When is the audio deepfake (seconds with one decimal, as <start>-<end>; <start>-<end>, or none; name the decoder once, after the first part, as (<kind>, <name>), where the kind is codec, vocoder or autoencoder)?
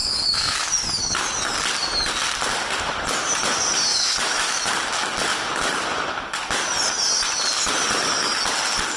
0.0-0.7 (autoencoder, DAC-VAE); 3.9-4.7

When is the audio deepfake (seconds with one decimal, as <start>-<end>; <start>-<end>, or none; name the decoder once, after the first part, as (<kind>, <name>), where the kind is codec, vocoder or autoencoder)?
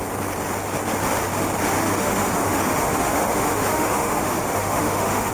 1.7-5.3 (autoencoder, DAC-VAE)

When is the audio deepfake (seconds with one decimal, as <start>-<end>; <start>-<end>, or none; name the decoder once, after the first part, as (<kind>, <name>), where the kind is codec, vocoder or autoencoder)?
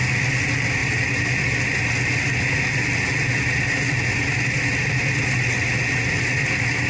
none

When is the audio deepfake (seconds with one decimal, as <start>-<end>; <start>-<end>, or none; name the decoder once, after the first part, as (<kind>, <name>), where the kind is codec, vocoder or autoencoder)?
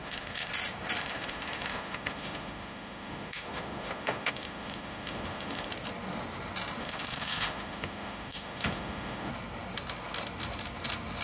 0.0-0.5 (autoencoder, DAC-VAE); 1.0-5.7; 6.8-9.3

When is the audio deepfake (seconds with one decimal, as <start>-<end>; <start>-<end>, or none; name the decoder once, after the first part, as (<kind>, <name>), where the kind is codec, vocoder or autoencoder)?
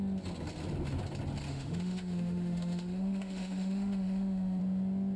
1.5-4.6 (autoencoder, DAC-VAE)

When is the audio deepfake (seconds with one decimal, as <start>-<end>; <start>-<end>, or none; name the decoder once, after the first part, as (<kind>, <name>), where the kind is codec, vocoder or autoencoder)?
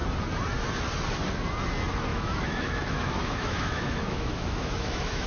2.1-5.3 (autoencoder, DAC-VAE)